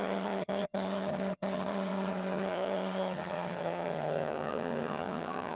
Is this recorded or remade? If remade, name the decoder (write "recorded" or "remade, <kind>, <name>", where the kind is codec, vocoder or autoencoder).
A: remade, vocoder, HiFi-GAN